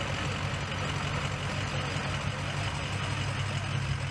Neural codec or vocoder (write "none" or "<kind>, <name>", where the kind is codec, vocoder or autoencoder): none